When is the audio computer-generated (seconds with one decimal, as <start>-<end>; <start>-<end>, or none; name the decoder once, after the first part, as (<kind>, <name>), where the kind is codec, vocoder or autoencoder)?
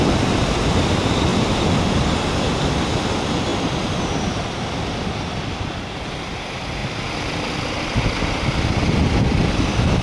none